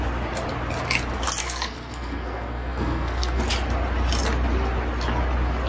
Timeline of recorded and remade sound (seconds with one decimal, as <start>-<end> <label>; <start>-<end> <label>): 0.0-1.4 recorded; 1.4-3.4 remade; 3.4-5.7 recorded